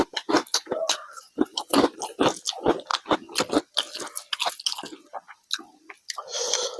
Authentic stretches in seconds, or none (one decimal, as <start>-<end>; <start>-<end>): 0.0-6.8